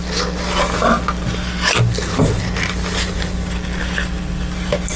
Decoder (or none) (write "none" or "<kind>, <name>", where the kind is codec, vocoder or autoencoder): none